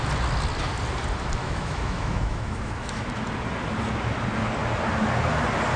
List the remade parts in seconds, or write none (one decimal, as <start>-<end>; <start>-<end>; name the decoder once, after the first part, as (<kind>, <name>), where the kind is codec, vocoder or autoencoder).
1.4-3.1 (autoencoder, DAC-VAE)